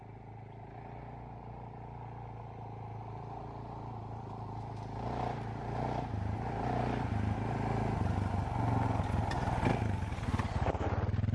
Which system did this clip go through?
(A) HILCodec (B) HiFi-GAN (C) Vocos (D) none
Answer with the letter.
D